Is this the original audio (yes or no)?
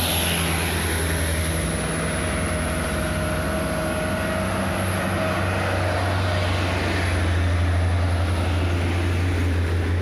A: yes